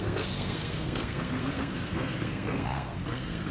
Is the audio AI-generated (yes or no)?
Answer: yes